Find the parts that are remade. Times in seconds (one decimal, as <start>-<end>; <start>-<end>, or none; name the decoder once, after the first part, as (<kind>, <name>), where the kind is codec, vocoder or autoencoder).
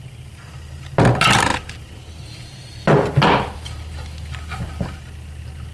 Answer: none